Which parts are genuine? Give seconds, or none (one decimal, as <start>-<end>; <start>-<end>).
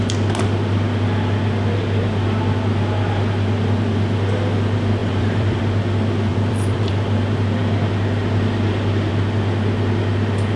0.0-5.0; 5.6-6.3; 6.9-10.6